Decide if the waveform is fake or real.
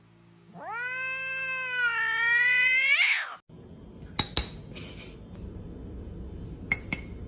real